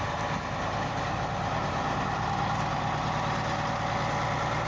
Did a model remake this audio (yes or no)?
no